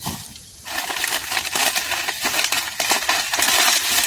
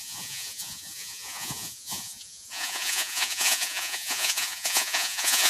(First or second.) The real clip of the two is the first